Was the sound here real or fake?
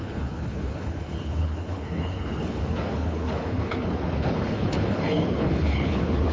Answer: fake